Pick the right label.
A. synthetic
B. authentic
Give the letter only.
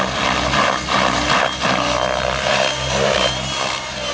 B